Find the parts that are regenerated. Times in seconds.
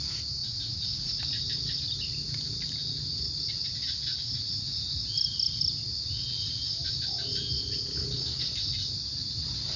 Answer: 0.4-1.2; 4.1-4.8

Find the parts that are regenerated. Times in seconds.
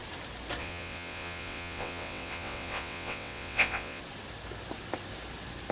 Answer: 0.6-4.0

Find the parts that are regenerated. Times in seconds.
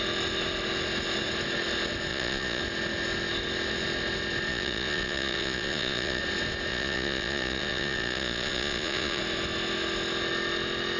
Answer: 2.1-2.6; 4.5-6.2; 6.7-9.2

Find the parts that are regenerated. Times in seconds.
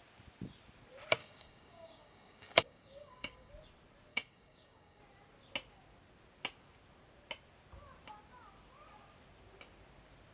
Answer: 1.2-3.5; 4.1-5.0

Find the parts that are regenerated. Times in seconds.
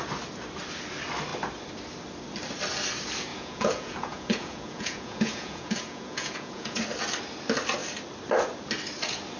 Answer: 3.3-6.8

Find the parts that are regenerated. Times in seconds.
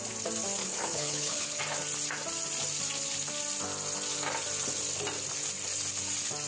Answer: 0.6-1.6